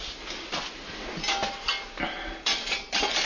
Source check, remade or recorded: recorded